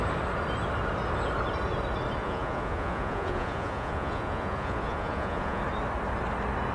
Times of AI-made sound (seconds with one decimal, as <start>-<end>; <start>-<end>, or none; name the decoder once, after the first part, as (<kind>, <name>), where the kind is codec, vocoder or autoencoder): 2.2-5.6 (vocoder, Vocos)

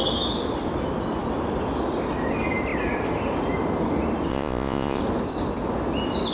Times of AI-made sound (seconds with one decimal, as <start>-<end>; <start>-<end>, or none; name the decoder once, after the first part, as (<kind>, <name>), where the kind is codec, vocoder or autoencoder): 4.3-5.0 (vocoder, Vocos)

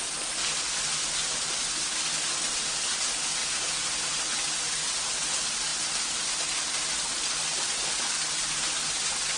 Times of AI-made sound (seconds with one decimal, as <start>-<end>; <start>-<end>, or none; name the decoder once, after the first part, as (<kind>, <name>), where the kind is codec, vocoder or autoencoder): 3.4-4.1 (vocoder, Vocos)